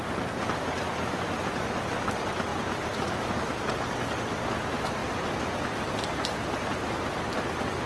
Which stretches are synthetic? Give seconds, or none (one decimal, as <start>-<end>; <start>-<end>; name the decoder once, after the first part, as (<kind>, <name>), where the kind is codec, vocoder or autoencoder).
2.5-3.5 (vocoder, BigVGAN v2); 5.0-7.1